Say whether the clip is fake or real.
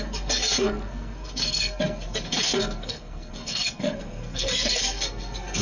fake